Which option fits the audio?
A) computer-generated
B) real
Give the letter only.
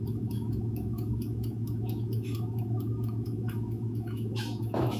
A